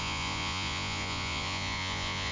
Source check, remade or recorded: remade